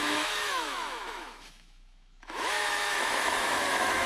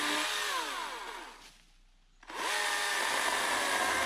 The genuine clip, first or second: second